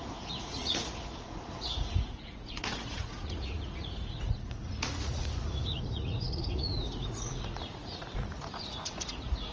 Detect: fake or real fake